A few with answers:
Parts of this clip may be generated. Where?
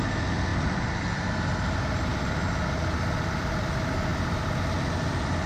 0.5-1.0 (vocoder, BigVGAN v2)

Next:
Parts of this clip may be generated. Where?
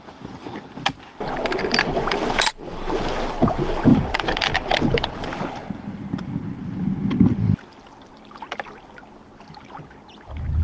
3.9-4.4 (vocoder, BigVGAN v2)